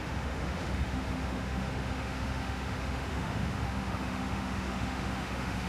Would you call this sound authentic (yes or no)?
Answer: no